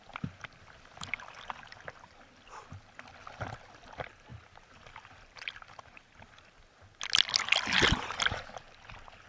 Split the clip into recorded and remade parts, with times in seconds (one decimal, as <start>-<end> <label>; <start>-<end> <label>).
0.0-9.3 recorded